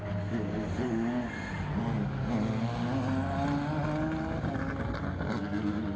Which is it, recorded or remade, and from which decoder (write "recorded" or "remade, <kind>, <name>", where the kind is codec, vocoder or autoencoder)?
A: recorded